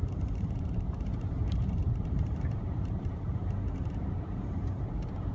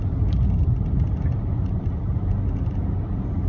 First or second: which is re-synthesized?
first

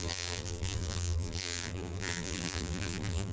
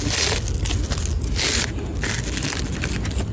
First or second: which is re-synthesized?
first